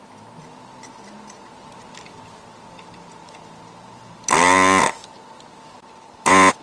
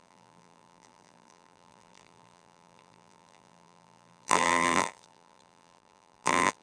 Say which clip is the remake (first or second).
second